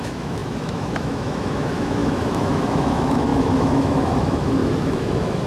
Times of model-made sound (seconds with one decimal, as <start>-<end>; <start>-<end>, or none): 0.0-5.5